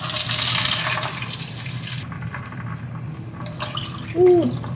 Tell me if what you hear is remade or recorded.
recorded